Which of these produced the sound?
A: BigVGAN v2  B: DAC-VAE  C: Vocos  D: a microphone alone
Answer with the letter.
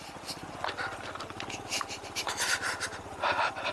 D